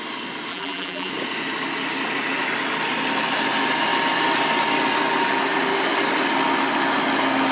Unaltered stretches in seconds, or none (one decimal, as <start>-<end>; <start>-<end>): 0.0-0.5; 1.1-7.5